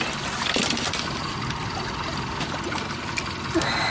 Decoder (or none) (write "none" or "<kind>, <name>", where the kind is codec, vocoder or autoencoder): none